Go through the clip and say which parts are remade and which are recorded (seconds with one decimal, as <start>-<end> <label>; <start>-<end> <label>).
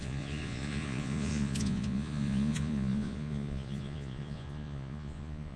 0.0-5.6 remade